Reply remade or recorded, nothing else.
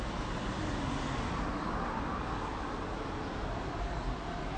recorded